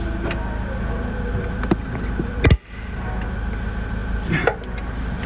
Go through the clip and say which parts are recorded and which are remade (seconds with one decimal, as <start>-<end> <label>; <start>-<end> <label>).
0.0-5.3 recorded